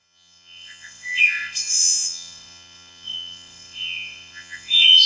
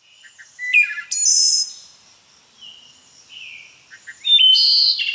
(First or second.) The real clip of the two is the second